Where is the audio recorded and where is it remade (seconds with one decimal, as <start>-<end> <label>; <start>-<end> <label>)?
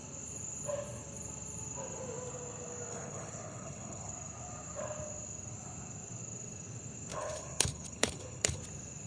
0.0-2.9 recorded; 2.9-4.1 remade; 4.1-7.1 recorded; 7.1-8.6 remade; 8.6-9.1 recorded